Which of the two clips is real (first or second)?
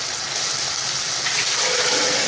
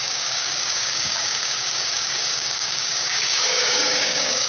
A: first